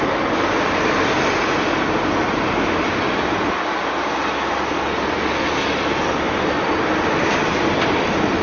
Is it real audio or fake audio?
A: real